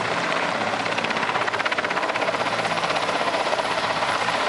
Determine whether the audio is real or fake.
fake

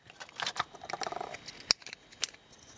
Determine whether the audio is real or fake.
real